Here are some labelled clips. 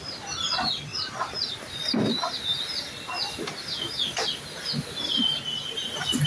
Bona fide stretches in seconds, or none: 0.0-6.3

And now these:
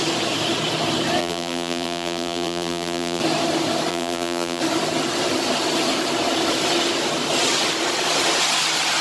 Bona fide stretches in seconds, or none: 0.0-1.2; 3.2-3.9; 4.6-9.0